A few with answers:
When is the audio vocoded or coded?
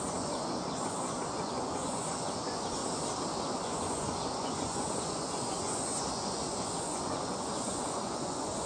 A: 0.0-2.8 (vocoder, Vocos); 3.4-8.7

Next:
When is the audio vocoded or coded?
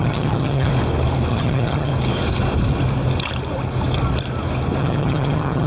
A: 0.0-0.7 (vocoder, HiFi-GAN); 1.3-1.9; 4.8-5.7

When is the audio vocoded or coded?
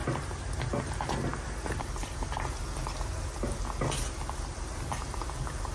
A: none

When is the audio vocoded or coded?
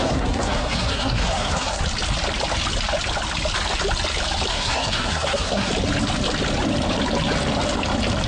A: 0.0-1.8 (codec, SNAC); 4.5-5.7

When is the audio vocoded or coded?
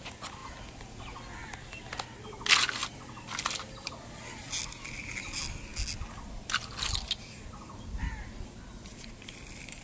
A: 2.8-3.9 (vocoder, BigVGAN v2); 8.9-9.8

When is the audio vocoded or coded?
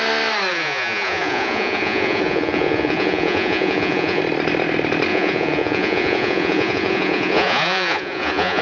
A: 0.5-4.2 (vocoder, Vocos); 5.1-8.6